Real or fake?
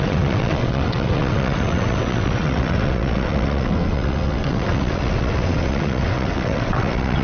fake